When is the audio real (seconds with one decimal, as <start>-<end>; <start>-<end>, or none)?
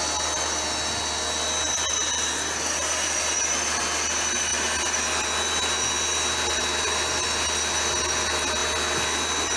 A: 0.0-9.6